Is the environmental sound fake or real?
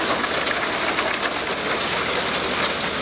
real